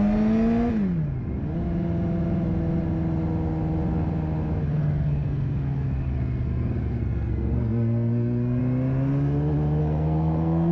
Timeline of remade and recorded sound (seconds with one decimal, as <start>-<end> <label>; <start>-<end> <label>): 0.0-4.7 recorded; 4.7-8.6 remade; 8.6-9.8 recorded; 9.8-10.7 remade